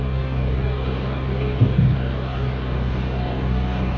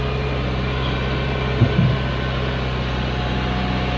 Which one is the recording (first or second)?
second